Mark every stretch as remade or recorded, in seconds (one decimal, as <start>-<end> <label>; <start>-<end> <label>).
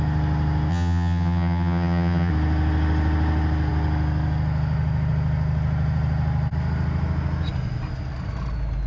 0.0-0.7 recorded; 0.7-2.3 remade; 2.3-8.9 recorded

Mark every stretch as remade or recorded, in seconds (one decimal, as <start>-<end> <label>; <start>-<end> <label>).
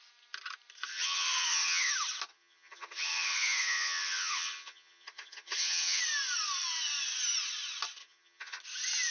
0.0-0.9 recorded; 0.9-1.9 remade; 1.9-2.3 recorded; 2.3-6.0 remade; 6.0-8.0 recorded; 8.0-8.6 remade; 8.6-9.1 recorded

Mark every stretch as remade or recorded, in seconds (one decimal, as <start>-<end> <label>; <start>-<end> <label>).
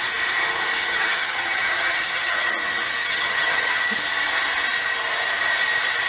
0.0-0.8 recorded; 0.8-2.5 remade; 2.5-3.0 recorded; 3.0-3.9 remade; 3.9-6.1 recorded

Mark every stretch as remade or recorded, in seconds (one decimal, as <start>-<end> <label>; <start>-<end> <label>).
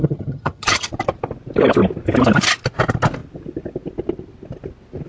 0.0-0.9 remade; 0.9-5.1 recorded